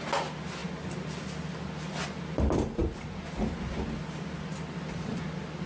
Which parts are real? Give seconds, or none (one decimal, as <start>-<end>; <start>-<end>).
0.0-5.7